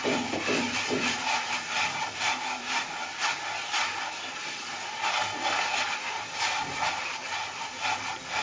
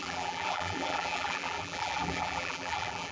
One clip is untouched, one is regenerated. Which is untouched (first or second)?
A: first